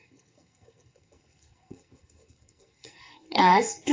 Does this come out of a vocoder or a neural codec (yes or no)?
yes